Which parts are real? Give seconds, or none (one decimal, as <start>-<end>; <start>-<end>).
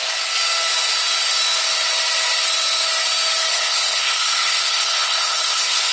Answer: 0.0-3.5